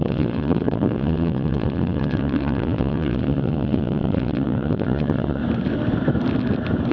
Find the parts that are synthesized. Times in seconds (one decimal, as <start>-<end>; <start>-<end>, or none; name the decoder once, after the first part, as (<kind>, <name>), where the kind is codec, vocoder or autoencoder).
0.0-5.4 (vocoder, Vocos)